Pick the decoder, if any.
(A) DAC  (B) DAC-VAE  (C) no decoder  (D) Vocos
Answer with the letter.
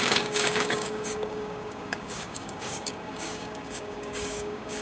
A